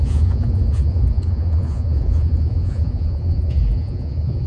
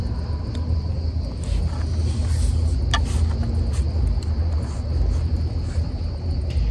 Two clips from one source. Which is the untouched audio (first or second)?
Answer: second